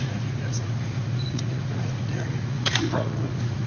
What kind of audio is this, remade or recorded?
remade